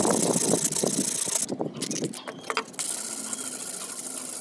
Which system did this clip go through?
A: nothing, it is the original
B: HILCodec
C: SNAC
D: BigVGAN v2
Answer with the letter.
A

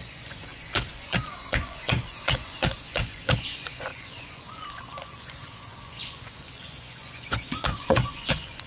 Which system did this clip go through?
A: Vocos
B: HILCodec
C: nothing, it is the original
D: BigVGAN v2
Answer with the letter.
A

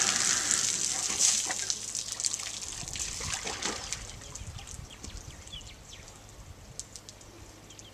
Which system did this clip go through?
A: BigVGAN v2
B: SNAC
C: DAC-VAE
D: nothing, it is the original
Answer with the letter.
D